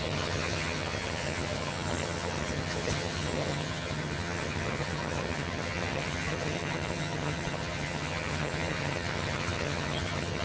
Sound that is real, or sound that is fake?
fake